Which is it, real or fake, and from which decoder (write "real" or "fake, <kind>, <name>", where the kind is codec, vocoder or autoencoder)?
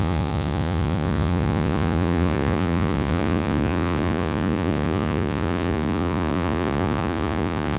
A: fake, vocoder, Vocos